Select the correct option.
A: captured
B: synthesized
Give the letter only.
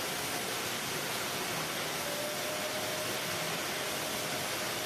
A